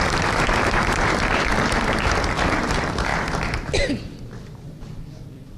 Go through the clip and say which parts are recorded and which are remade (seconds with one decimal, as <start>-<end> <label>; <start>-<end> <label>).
0.0-3.1 remade; 3.1-3.7 recorded; 3.7-5.6 remade